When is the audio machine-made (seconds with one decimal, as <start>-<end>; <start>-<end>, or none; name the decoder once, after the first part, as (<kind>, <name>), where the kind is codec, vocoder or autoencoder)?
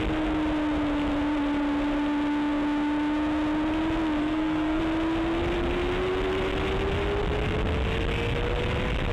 4.2-4.8 (codec, SNAC)